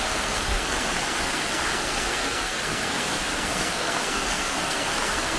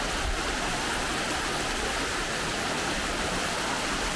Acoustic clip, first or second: second